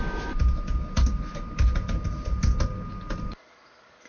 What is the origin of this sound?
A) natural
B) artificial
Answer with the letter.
A